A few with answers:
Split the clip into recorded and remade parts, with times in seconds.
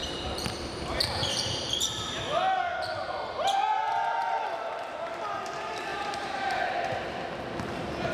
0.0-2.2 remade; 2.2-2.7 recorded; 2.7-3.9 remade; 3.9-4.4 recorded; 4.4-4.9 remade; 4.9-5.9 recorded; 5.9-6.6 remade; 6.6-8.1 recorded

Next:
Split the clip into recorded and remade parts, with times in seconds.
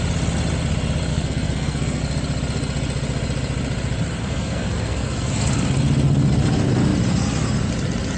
0.0-1.1 recorded; 1.1-2.0 remade; 2.0-4.2 recorded; 4.2-5.3 remade; 5.3-8.2 recorded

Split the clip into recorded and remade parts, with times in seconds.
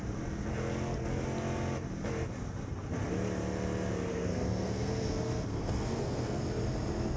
0.0-4.1 recorded; 4.1-6.4 remade; 6.4-7.2 recorded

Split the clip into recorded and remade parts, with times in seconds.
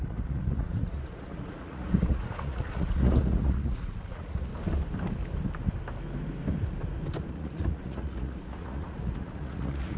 0.0-4.5 remade; 4.5-7.3 recorded; 7.3-10.0 remade